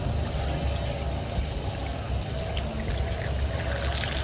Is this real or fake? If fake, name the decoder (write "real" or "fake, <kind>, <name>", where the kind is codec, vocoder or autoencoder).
real